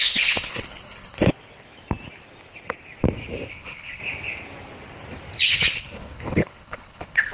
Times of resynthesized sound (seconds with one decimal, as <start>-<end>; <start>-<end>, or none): 0.0-1.3; 3.5-4.0; 5.5-7.3